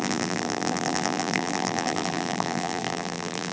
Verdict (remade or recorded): remade